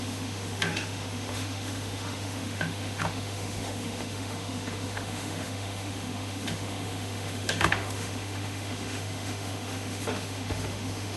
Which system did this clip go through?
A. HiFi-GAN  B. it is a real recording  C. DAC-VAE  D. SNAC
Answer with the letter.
C